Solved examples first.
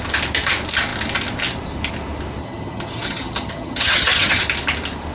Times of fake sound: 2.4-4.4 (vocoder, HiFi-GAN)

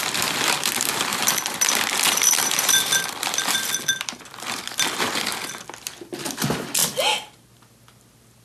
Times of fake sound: 1.1-4.3 (vocoder, BigVGAN v2)

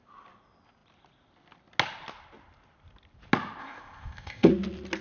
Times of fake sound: 3.6-4.5 (codec, ZipCodec)

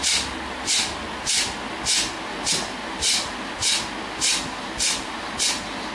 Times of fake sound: 0.0-3.5 (vocoder, BigVGAN v2); 4.3-5.1

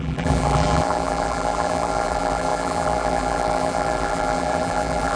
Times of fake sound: 0.0-5.2 (vocoder, BigVGAN v2)

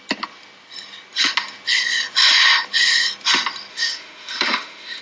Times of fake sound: 3.7-5.0 (autoencoder, DAC-VAE)

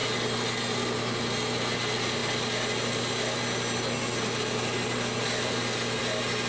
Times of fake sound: 0.0-1.1 (vocoder, BigVGAN v2)